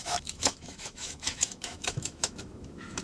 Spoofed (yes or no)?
yes